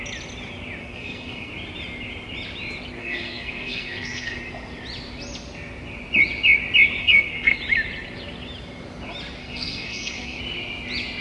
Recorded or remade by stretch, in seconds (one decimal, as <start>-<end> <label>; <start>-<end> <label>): 0.0-0.8 recorded; 0.8-1.5 remade; 1.5-3.0 recorded; 3.0-4.4 remade; 4.4-7.0 recorded; 7.0-7.6 remade; 7.6-9.4 recorded; 9.4-10.4 remade; 10.4-11.2 recorded